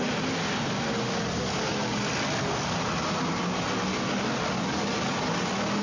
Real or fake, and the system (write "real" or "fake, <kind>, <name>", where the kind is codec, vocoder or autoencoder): real